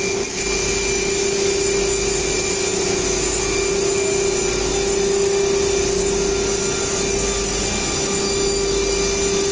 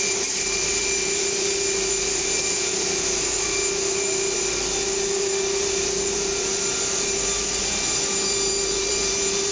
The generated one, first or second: second